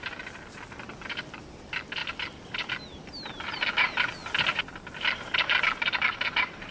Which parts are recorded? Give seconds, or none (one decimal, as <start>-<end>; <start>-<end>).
0.0-2.0; 2.7-6.7